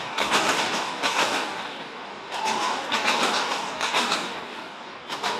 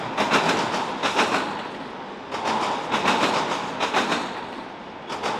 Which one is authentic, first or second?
second